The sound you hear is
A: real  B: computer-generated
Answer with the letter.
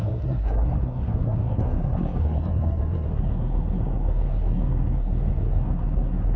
B